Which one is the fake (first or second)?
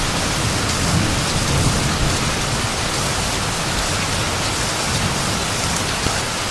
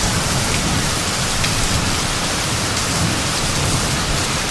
second